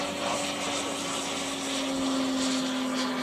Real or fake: real